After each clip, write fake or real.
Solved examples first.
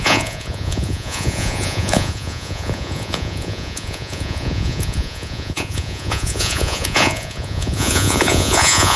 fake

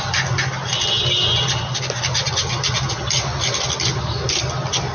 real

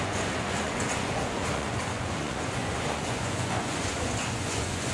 fake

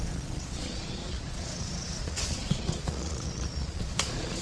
fake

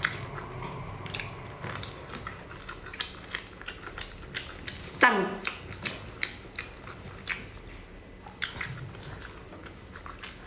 real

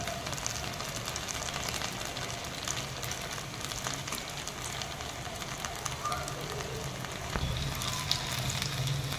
real